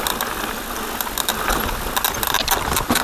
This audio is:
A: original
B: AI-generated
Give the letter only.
A